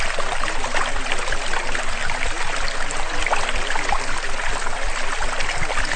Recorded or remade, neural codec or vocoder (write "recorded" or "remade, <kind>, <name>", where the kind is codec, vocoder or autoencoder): recorded